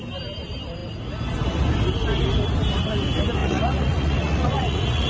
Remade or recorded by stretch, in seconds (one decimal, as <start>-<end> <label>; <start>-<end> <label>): 0.0-3.4 recorded; 3.4-5.1 remade